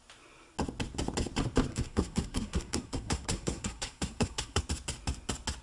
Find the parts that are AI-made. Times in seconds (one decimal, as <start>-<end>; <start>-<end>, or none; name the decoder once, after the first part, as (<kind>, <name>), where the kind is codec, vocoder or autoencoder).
1.7-4.6 (codec, SNAC)